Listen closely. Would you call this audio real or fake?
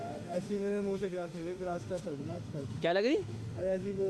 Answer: fake